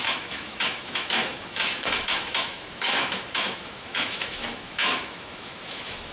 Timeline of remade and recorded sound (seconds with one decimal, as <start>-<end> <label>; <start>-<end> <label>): 0.0-6.1 remade